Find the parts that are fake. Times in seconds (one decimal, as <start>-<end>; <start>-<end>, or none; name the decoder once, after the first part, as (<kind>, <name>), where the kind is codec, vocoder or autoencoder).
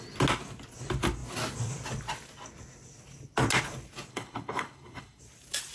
4.1-5.2 (codec, HILCodec)